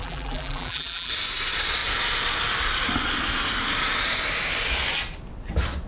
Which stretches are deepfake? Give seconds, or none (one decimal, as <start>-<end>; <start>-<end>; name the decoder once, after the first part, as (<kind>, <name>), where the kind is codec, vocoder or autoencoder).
0.0-1.1 (vocoder, BigVGAN v2)